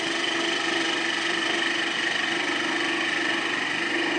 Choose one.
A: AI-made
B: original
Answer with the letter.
B